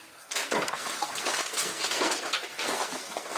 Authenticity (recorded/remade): remade